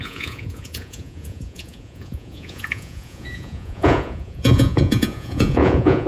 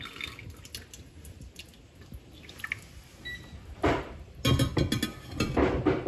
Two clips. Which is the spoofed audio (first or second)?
first